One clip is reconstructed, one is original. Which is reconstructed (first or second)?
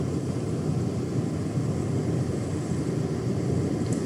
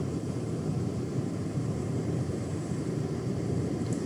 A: second